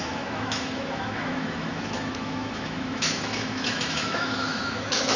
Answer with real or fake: fake